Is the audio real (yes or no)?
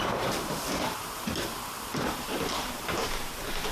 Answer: no